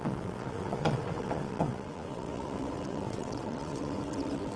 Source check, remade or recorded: remade